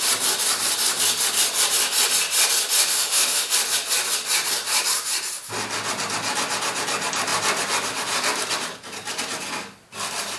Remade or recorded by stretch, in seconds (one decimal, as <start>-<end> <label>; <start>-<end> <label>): 0.0-2.9 recorded; 2.9-3.5 remade; 3.5-10.4 recorded